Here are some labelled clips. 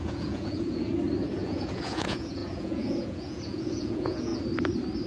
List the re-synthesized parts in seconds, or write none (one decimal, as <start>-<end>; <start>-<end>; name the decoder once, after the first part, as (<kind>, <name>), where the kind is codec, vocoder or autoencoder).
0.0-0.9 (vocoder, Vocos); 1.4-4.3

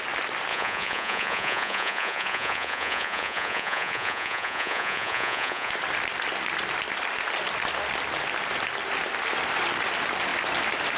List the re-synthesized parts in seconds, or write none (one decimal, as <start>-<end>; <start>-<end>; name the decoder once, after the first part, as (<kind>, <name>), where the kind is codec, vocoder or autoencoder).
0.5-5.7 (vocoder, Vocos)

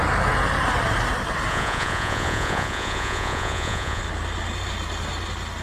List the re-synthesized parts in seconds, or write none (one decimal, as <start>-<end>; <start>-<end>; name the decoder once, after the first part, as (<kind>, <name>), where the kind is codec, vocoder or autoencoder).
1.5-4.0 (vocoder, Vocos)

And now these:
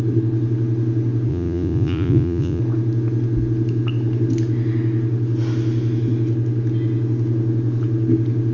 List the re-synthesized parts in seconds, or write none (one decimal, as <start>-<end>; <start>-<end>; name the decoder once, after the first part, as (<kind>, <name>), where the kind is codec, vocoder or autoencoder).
1.3-2.6 (vocoder, Vocos)